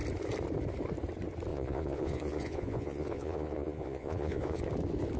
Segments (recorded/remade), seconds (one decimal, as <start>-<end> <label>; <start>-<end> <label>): 0.0-1.5 recorded; 1.5-4.6 remade; 4.6-5.2 recorded